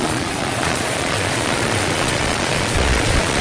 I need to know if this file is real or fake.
fake